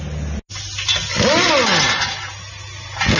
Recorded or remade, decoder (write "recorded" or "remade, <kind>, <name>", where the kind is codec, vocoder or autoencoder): recorded